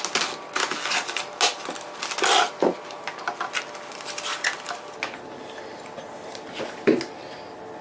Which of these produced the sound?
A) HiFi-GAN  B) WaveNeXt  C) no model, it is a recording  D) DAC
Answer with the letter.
C